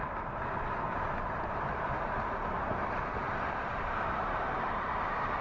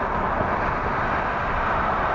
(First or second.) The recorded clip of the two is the second